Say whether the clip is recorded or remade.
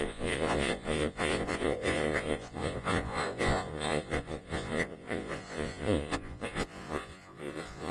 remade